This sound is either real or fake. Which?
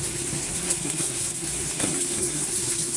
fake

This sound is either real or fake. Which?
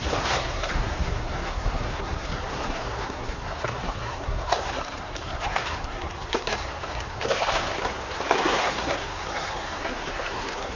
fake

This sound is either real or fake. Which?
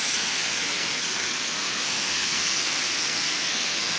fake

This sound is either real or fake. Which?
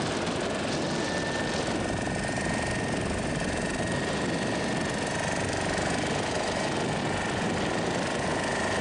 real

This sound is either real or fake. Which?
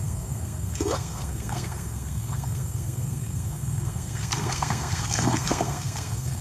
fake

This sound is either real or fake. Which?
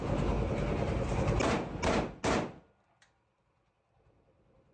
real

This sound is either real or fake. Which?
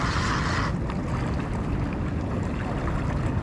real